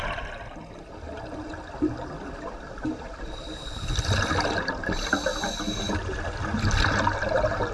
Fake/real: real